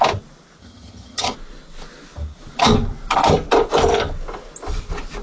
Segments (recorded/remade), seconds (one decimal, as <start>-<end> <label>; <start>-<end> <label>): 0.0-0.6 recorded; 0.6-1.3 remade; 1.3-5.2 recorded

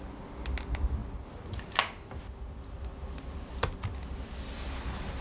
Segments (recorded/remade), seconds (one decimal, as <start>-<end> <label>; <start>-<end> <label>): 0.0-5.2 recorded

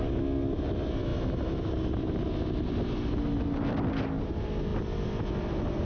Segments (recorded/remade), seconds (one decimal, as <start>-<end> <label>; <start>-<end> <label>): 0.0-5.8 recorded

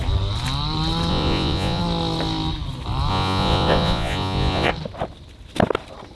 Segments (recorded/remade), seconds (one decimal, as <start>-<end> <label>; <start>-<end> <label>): 0.0-1.1 recorded; 1.1-1.8 remade; 1.8-3.1 recorded; 3.1-4.7 remade; 4.7-6.1 recorded

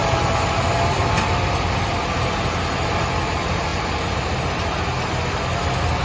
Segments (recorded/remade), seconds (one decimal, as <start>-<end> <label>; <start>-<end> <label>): 0.0-6.0 recorded

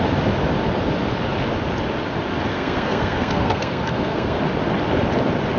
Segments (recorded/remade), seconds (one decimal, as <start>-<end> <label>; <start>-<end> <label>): 0.0-2.5 recorded; 2.5-4.4 remade; 4.4-5.6 recorded

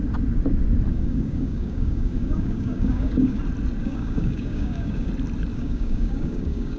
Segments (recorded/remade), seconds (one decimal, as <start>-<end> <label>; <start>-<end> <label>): 0.0-0.9 recorded; 0.9-3.4 remade; 3.4-3.8 recorded; 3.8-5.1 remade; 5.1-5.5 recorded; 5.5-6.8 remade

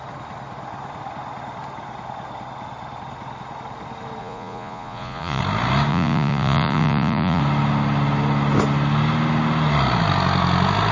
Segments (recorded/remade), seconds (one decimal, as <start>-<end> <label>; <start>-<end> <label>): 0.0-4.2 recorded; 4.2-5.4 remade; 5.4-5.9 recorded; 5.9-7.4 remade; 7.4-10.9 recorded